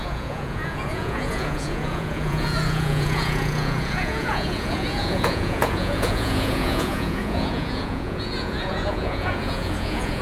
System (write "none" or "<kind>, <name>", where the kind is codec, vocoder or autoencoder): vocoder, Vocos